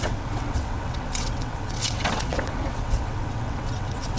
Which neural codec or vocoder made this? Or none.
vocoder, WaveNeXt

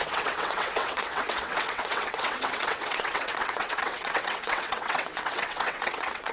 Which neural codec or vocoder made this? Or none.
vocoder, WaveNeXt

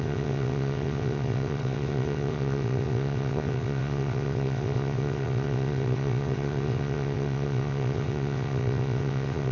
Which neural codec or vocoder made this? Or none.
vocoder, WaveNeXt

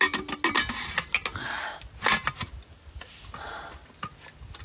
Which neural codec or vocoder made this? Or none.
none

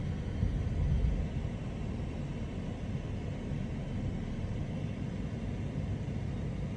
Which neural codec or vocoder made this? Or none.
none